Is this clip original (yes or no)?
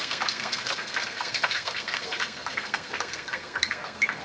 no